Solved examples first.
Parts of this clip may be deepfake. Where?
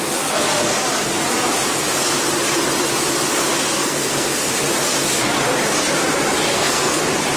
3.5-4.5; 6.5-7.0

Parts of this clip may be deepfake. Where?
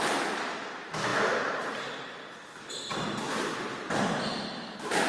0.0-5.1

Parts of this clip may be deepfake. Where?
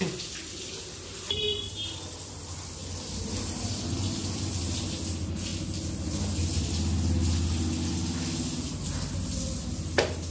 none